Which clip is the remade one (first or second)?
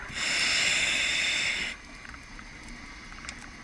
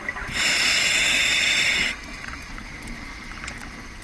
second